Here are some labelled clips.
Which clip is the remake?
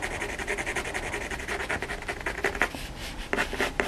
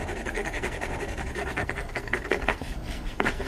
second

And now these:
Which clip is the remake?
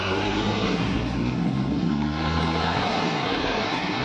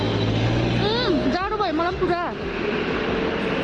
first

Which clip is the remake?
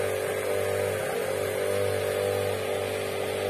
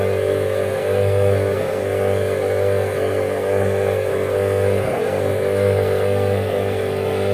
second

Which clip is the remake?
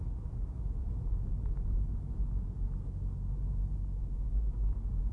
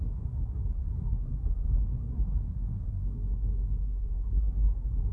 second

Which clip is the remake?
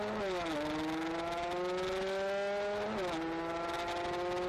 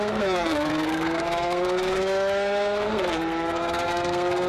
second